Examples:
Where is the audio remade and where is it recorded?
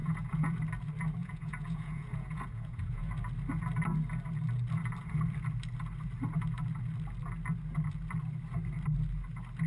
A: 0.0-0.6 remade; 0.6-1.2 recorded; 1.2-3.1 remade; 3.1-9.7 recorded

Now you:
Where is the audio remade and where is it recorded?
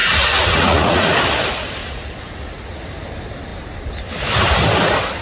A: 0.0-1.2 remade; 1.2-1.8 recorded; 1.8-2.8 remade; 2.8-5.2 recorded